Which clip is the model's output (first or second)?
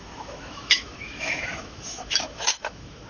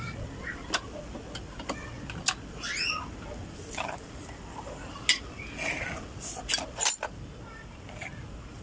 first